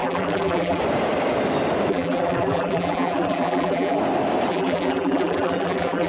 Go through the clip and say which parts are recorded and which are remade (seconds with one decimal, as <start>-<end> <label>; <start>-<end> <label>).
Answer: 0.0-0.8 remade; 0.8-1.9 recorded; 1.9-4.0 remade; 4.0-4.5 recorded; 4.5-6.1 remade